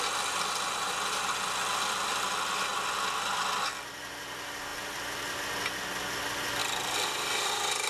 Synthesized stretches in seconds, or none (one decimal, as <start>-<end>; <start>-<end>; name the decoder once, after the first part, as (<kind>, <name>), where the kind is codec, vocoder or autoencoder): 4.7-5.4 (vocoder, BigVGAN v2); 6.6-7.9